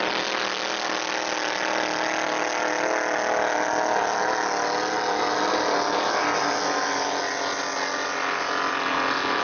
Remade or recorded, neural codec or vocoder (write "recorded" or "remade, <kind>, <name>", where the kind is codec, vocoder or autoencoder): recorded